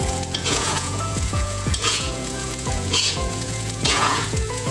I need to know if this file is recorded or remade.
remade